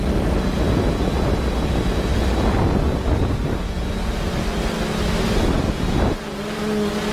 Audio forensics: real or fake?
real